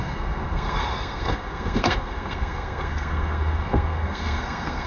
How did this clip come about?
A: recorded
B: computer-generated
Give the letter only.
B